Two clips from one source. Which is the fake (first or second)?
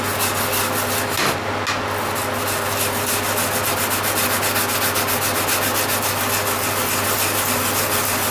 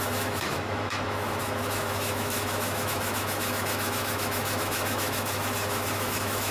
second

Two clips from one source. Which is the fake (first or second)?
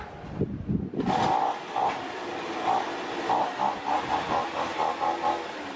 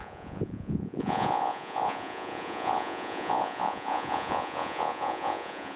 second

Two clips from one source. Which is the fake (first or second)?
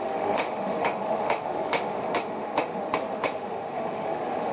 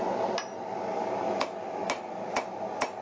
first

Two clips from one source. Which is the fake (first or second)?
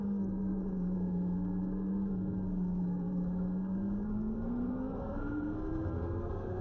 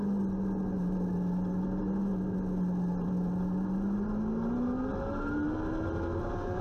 first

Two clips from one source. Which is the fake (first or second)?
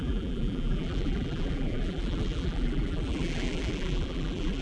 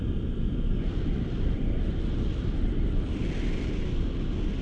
first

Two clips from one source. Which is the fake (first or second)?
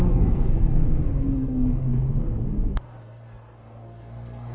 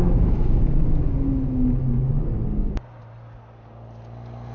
first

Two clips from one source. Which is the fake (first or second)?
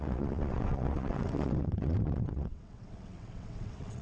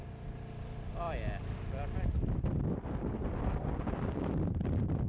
first